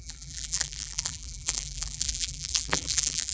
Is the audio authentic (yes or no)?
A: no